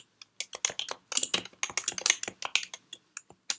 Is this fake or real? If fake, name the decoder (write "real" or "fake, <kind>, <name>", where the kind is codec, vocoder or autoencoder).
real